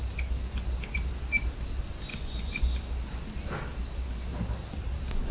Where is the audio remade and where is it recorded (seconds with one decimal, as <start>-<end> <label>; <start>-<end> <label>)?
0.0-2.1 recorded; 2.1-2.6 remade; 2.6-5.3 recorded